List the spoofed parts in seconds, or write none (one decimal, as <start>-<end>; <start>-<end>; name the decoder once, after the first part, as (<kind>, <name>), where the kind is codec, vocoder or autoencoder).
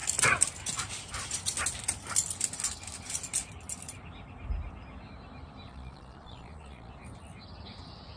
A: 5.7-6.9 (vocoder, Vocos)